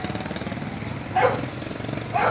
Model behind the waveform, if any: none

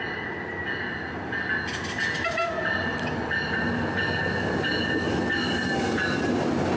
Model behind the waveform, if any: none